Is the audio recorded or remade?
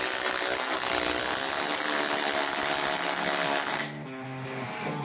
recorded